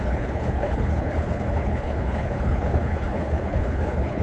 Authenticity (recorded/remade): remade